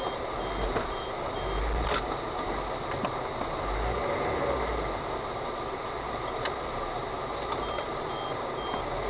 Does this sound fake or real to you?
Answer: real